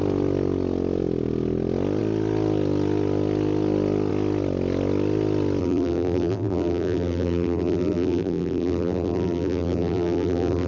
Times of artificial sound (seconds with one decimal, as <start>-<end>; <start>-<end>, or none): 5.6-10.7